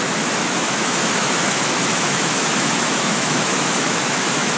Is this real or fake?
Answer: fake